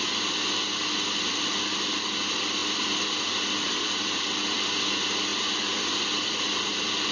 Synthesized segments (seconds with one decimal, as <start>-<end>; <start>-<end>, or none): none